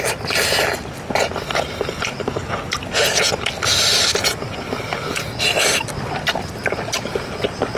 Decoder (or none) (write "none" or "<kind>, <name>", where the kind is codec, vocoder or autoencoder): none